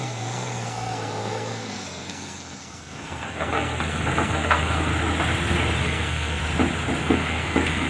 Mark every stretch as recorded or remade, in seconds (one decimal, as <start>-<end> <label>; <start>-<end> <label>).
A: 0.0-4.9 remade; 4.9-5.8 recorded; 5.8-6.4 remade; 6.4-7.0 recorded; 7.0-7.9 remade